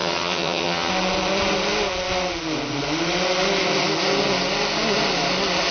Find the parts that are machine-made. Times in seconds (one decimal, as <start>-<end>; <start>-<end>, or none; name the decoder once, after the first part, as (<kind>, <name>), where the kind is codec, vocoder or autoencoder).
0.0-0.9 (vocoder, HiFi-GAN)